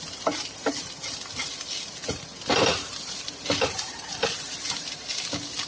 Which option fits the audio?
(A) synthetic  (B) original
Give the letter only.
B